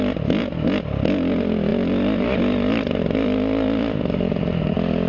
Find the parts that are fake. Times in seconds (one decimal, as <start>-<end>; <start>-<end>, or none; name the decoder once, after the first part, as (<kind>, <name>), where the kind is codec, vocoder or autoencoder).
1.7-5.1 (vocoder, BigVGAN v2)